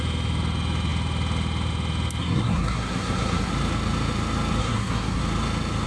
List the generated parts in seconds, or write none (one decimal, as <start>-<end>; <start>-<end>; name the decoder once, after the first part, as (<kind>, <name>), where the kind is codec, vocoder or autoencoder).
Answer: 2.2-3.5 (codec, SNAC); 4.6-5.2